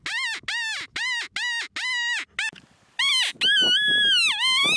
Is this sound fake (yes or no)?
no